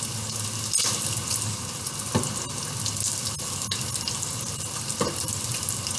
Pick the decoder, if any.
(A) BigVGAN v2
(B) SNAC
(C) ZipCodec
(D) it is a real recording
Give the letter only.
D